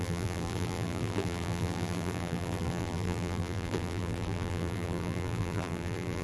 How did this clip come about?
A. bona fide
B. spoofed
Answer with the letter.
B